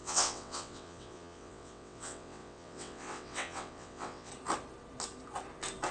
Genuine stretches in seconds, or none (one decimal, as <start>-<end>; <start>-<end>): 4.3-5.9